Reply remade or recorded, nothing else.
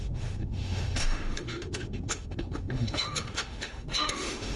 remade